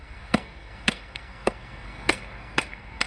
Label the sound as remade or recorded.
remade